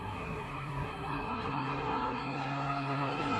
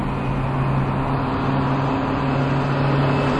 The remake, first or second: first